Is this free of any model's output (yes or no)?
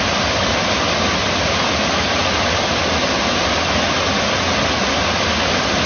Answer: yes